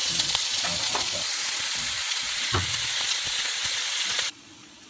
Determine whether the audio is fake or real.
fake